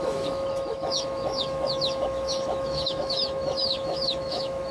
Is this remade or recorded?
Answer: remade